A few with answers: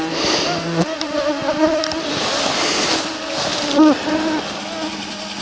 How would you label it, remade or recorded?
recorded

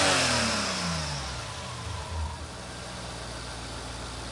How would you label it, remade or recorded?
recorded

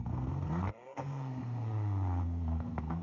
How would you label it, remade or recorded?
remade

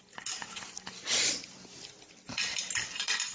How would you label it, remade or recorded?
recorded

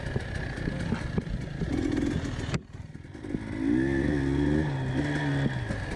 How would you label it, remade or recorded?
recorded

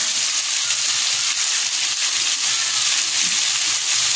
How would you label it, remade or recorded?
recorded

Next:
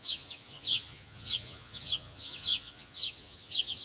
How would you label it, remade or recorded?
remade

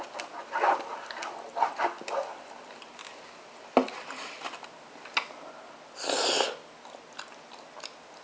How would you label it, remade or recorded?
recorded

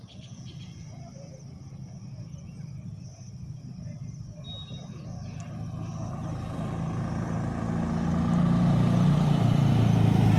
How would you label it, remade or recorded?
recorded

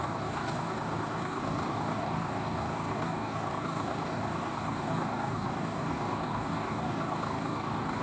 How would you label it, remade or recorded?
remade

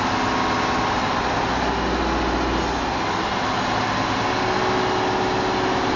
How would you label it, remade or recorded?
recorded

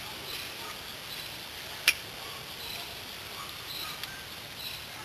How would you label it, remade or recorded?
remade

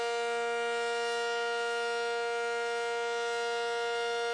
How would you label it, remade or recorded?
recorded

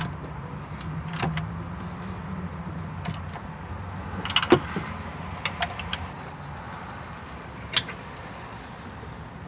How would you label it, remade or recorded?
recorded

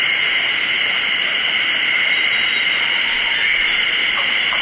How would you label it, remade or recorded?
recorded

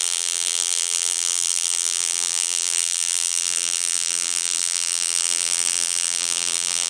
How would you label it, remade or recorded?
remade